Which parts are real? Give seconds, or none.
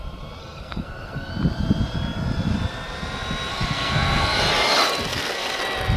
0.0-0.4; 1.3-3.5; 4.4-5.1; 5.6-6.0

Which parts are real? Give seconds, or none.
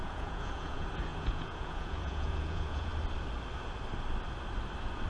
2.9-5.1